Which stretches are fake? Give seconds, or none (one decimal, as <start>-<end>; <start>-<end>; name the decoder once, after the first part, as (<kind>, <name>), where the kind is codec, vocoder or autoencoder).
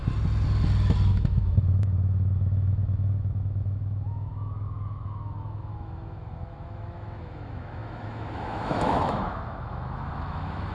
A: 1.1-10.7 (autoencoder, DAC-VAE)